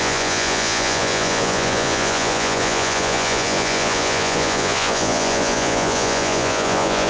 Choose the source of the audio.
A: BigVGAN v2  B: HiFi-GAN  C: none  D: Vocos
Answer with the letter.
D